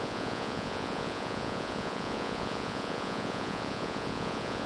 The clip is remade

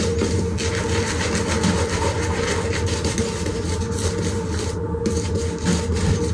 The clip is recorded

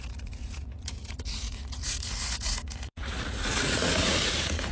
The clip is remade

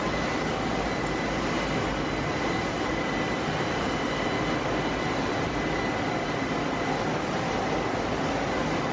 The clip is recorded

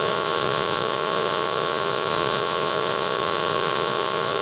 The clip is remade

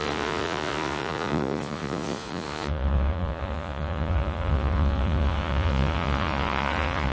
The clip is remade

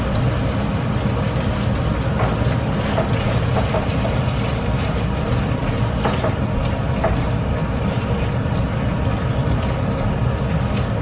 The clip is recorded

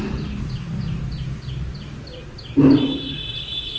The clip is recorded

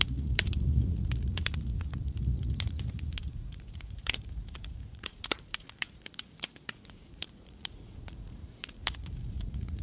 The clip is remade